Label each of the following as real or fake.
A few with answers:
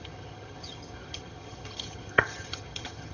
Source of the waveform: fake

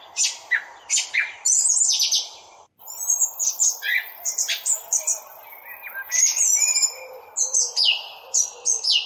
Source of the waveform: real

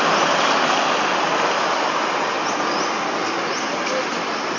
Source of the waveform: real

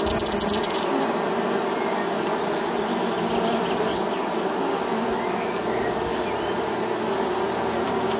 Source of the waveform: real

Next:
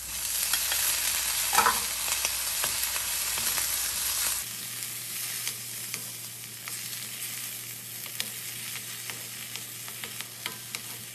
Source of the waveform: real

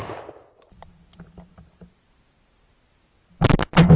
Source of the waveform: real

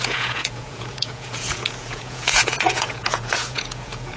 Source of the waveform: fake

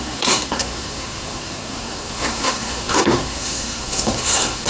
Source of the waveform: fake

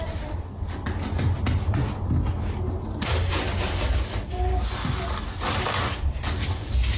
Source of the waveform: real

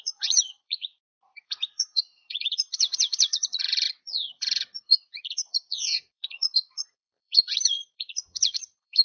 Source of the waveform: fake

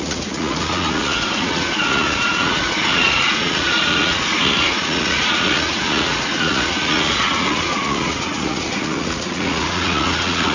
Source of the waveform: fake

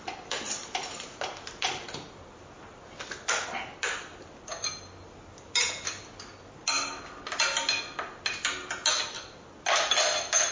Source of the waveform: real